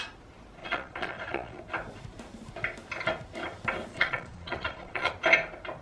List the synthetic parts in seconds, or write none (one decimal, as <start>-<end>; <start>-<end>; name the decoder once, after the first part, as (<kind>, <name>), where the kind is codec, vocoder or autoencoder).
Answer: 0.6-1.6 (vocoder, Vocos); 3.9-5.1